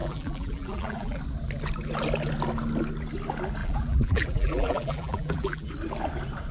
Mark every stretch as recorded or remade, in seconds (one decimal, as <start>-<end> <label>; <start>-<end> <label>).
0.0-1.2 remade; 1.2-3.6 recorded; 3.6-5.7 remade; 5.7-6.5 recorded